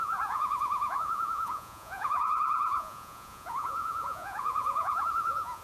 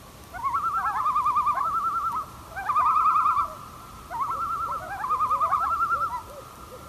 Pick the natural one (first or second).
second